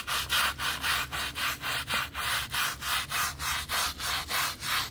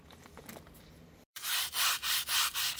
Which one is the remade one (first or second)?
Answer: second